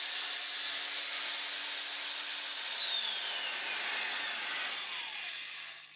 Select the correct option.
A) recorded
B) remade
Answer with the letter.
A